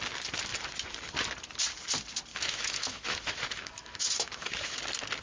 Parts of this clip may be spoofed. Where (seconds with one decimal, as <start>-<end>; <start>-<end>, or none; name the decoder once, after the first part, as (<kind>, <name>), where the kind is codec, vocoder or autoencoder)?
2.3-4.8 (autoencoder, DAC-VAE)